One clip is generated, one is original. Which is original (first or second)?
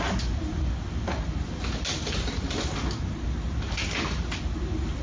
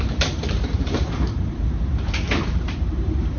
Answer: first